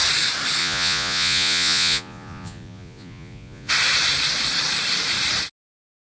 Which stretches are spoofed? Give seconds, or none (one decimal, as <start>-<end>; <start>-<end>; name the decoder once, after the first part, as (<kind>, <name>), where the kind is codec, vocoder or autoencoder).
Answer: 0.6-3.7 (vocoder, Vocos)